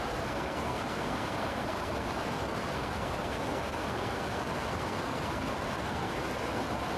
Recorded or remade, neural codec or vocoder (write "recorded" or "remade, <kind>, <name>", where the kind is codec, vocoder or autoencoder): remade, codec, SNAC